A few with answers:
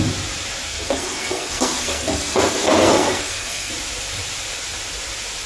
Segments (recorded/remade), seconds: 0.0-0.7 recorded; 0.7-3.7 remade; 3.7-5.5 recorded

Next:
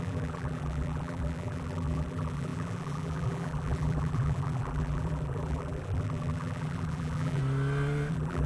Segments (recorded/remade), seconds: 0.0-7.4 remade; 7.4-8.1 recorded; 8.1-8.5 remade

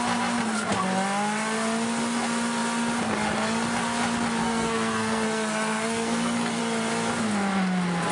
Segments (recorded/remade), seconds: 0.0-4.4 recorded; 4.4-6.6 remade; 6.6-8.1 recorded

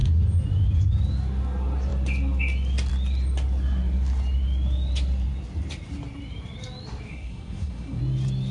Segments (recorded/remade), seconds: 0.0-7.1 recorded; 7.1-8.0 remade; 8.0-8.5 recorded

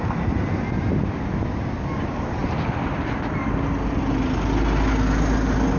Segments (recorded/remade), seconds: 0.0-5.8 recorded

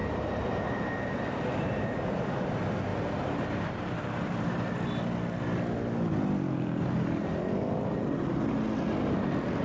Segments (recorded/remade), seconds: 0.0-2.2 remade; 2.2-2.9 recorded; 2.9-4.7 remade; 4.7-9.6 recorded

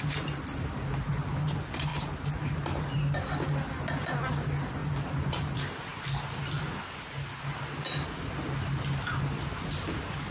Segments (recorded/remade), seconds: 0.0-1.9 recorded; 1.9-2.4 remade; 2.4-4.8 recorded; 4.8-5.5 remade; 5.5-10.3 recorded

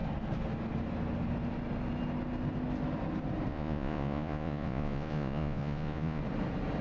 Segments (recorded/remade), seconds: 0.0-3.5 recorded; 3.5-6.2 remade; 6.2-6.8 recorded